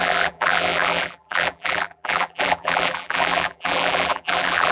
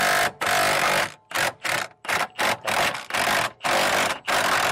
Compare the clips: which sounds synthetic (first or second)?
first